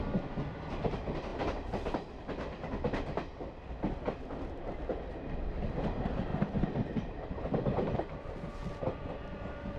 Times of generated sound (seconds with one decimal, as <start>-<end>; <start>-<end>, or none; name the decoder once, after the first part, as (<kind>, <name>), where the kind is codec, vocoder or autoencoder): 6.3-8.5 (vocoder, BigVGAN v2)